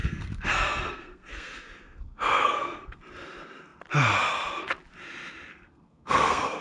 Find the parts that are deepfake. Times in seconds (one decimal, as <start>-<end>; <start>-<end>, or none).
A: 0.0-3.0; 5.5-6.6